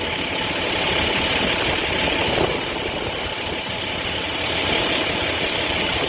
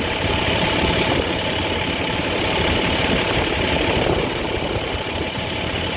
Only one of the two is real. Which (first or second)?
first